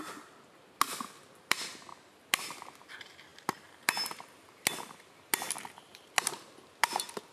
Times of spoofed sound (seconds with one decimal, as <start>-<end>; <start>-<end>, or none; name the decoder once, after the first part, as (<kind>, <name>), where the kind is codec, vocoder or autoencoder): none